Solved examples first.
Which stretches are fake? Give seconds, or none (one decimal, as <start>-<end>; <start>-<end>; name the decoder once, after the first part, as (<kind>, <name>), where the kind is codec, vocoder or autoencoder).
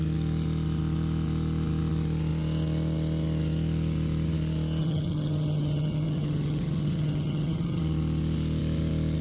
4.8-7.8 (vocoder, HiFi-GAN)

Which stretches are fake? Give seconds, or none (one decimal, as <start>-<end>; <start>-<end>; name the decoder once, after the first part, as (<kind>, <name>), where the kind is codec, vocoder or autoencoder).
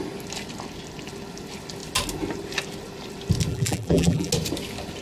3.5-4.3 (vocoder, BigVGAN v2)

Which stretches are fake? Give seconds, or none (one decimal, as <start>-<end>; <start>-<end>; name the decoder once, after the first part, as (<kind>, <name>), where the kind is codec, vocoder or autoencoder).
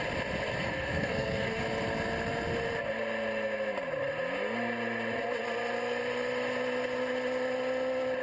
0.6-1.6 (codec, SNAC)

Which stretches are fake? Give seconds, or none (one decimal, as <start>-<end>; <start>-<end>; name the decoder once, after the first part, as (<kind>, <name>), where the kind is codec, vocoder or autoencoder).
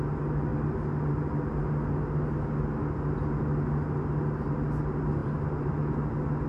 5.2-5.7 (vocoder, BigVGAN v2)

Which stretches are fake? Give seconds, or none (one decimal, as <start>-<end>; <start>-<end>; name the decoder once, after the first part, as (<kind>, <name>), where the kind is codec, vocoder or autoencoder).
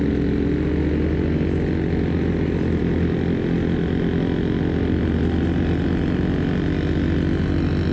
none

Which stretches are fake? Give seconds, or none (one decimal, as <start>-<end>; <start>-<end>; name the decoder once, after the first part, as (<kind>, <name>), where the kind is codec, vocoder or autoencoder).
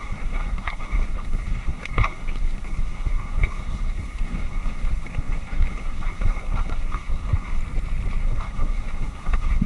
0.0-7.6 (codec, SNAC); 8.2-9.7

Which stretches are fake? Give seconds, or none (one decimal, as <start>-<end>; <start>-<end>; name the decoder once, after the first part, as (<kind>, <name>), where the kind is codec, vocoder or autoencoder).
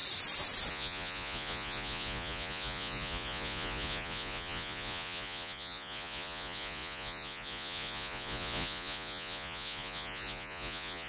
0.7-11.1 (vocoder, Vocos)